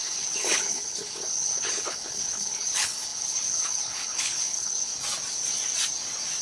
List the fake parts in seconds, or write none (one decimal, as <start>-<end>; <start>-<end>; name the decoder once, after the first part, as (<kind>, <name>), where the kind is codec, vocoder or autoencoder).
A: 0.0-4.9 (codec, HILCodec)